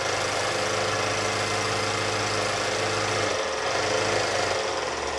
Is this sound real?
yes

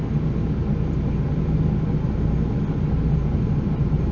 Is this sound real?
yes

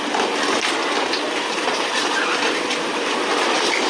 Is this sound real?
yes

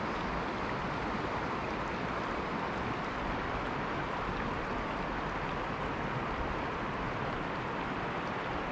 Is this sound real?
yes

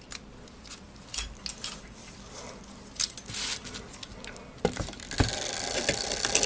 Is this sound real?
yes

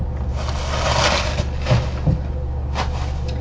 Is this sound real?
yes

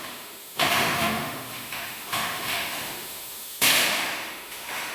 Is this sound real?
no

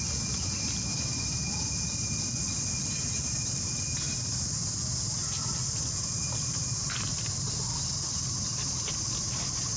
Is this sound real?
yes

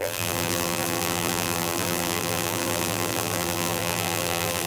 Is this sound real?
no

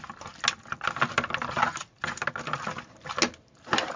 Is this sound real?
yes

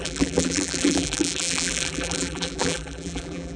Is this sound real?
no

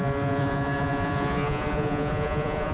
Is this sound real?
no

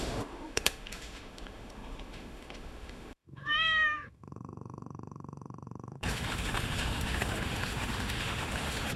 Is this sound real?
no